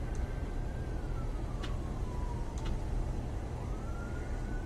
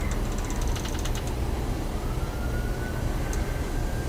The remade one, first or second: first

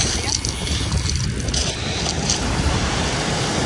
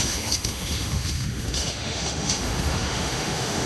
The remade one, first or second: second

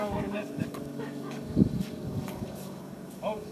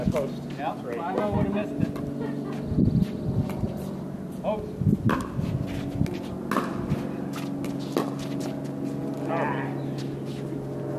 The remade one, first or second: first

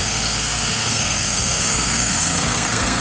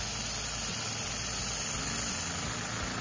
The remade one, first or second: first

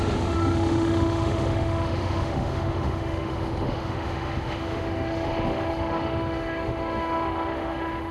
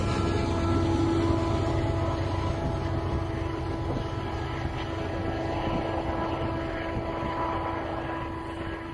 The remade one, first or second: first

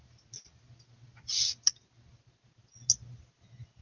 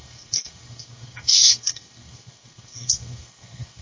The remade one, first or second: second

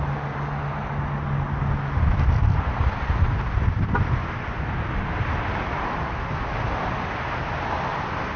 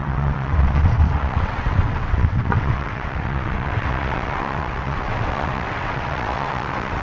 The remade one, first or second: second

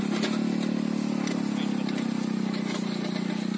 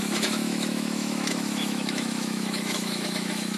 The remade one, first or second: second